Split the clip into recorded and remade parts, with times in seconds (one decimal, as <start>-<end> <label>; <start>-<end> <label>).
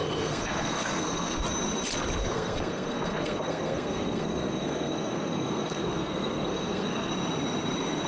0.0-1.4 remade; 1.4-2.2 recorded; 2.2-7.1 remade; 7.1-8.1 recorded